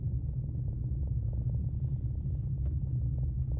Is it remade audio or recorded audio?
recorded